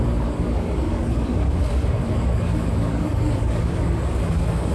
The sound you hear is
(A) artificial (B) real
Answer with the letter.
A